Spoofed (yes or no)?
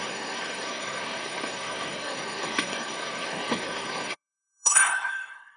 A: yes